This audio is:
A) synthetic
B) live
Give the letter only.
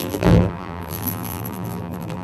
A